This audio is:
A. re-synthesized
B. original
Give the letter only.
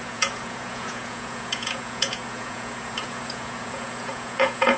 A